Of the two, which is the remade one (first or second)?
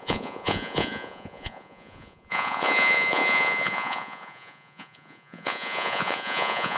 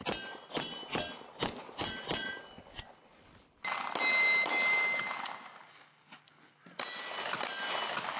first